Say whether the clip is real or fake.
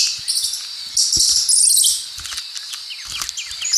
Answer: real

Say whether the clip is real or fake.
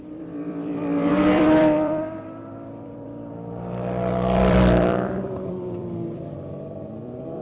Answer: fake